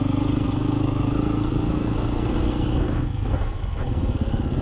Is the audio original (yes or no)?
no